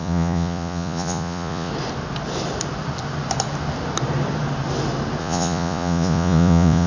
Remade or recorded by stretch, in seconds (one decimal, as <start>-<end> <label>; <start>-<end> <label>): 0.0-1.7 remade; 1.7-5.2 recorded; 5.2-6.9 remade